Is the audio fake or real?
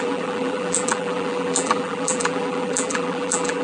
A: fake